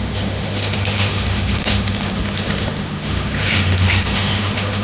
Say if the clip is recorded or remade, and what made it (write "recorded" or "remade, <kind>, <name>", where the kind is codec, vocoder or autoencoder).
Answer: remade, autoencoder, DAC-VAE